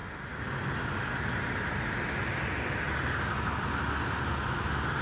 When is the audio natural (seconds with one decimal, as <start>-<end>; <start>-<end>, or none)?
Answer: 0.0-5.0